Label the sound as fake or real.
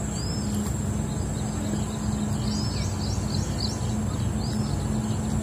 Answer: real